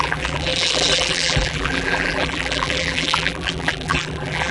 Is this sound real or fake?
fake